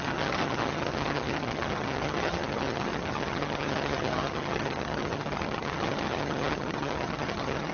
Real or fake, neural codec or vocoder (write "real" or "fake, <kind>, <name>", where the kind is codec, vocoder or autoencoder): fake, vocoder, HiFi-GAN